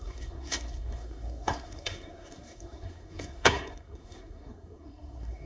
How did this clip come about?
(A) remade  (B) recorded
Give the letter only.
A